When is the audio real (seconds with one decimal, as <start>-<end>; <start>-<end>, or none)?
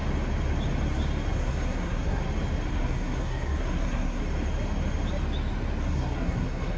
0.0-1.4; 2.2-2.7; 4.2-5.8